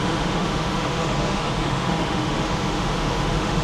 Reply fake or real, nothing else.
fake